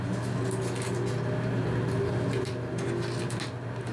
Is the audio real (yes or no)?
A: yes